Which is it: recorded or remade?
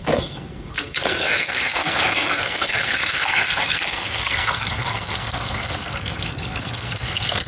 remade